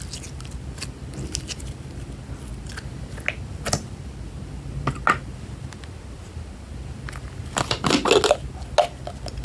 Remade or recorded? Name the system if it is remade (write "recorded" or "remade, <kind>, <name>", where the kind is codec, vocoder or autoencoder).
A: recorded